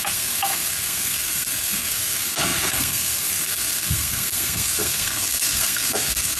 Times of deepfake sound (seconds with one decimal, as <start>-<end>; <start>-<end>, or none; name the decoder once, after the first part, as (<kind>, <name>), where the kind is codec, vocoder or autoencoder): 0.0-6.4 (codec, SNAC)